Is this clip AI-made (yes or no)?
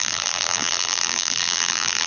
yes